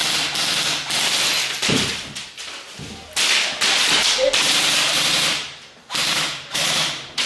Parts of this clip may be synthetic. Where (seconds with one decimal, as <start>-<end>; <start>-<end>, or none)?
4.4-7.3